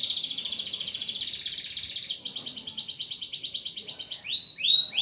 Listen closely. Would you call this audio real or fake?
real